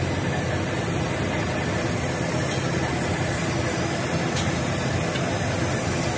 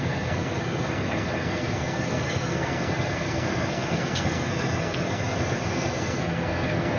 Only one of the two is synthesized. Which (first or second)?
second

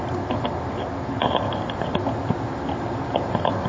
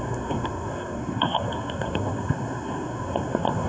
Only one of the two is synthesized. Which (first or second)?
second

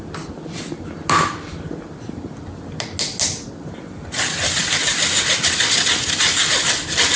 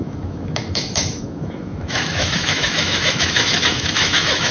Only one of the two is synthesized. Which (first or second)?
second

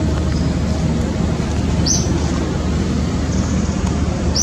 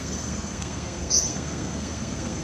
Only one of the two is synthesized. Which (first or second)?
second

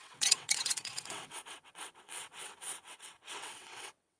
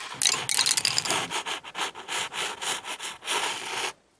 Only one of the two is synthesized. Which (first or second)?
first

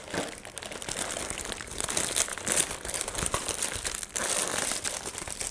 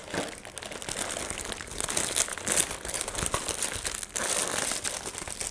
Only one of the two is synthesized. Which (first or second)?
first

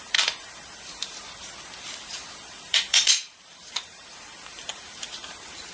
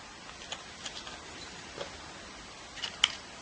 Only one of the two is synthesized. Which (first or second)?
first